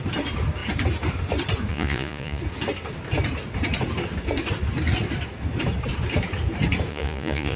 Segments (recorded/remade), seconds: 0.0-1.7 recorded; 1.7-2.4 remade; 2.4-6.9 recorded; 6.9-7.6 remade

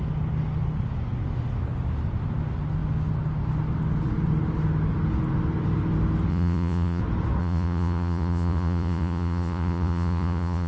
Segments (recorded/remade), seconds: 0.0-6.3 recorded; 6.3-7.0 remade; 7.0-7.4 recorded; 7.4-10.7 remade

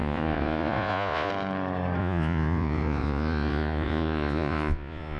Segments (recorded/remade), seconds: 0.0-1.3 remade; 1.3-2.0 recorded; 2.0-5.2 remade

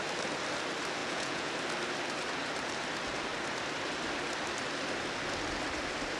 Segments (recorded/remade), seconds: 0.0-1.0 recorded; 1.0-1.5 remade; 1.5-6.2 recorded

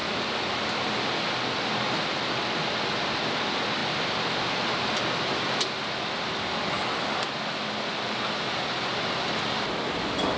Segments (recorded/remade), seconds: 0.0-10.4 recorded

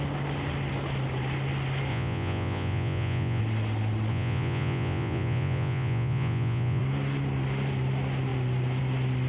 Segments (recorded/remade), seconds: 0.0-1.9 recorded; 1.9-3.4 remade; 3.4-4.1 recorded; 4.1-6.8 remade; 6.8-9.3 recorded

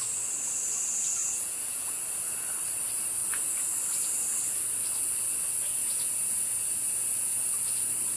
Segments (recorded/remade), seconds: 0.0-1.2 recorded; 1.2-2.0 remade; 2.0-5.8 recorded; 5.8-7.4 remade; 7.4-8.2 recorded